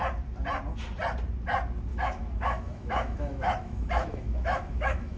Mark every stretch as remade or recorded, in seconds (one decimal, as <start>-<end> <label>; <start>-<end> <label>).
0.0-1.9 recorded; 1.9-5.2 remade